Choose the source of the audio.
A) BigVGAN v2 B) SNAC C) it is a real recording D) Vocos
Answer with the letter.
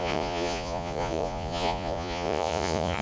D